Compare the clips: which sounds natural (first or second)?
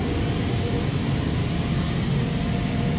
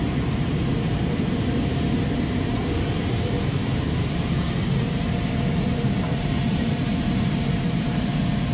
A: first